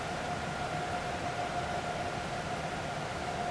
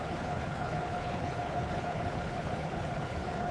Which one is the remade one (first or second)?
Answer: second